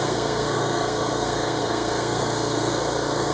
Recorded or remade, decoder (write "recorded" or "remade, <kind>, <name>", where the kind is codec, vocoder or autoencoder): remade, codec, SNAC